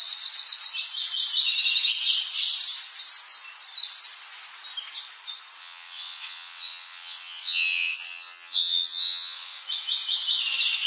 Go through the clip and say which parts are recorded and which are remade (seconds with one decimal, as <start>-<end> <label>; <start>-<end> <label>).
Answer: 0.0-5.6 recorded; 5.6-9.6 remade; 9.6-10.9 recorded